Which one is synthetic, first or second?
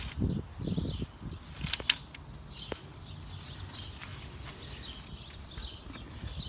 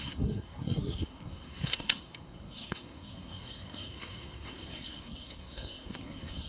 second